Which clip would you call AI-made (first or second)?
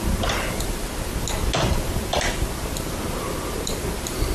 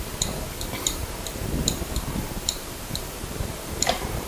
second